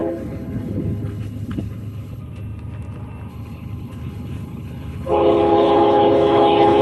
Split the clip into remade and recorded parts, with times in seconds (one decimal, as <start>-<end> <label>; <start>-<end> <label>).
0.0-2.2 remade; 2.2-3.3 recorded; 3.3-6.8 remade